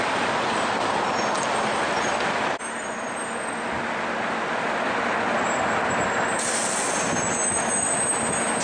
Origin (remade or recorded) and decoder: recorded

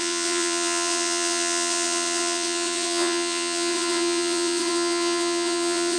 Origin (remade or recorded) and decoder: remade, vocoder, WaveNeXt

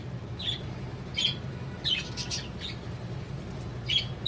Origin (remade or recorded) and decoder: recorded